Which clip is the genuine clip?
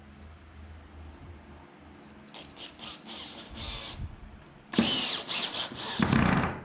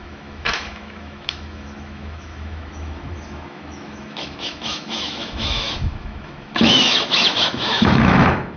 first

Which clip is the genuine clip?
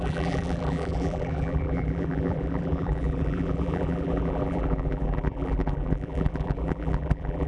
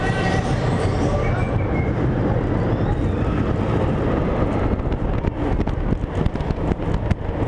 second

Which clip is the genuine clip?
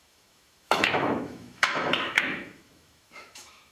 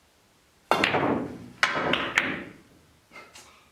second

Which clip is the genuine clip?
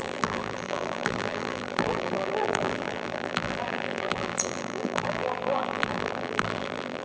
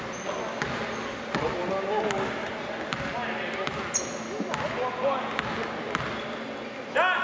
second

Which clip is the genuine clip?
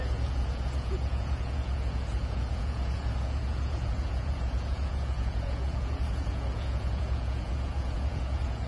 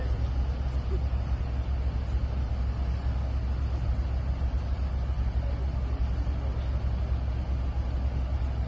second